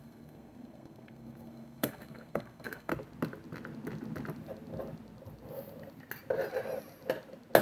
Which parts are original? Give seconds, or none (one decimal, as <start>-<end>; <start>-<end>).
2.9-7.6